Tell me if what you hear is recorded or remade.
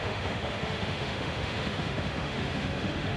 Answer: remade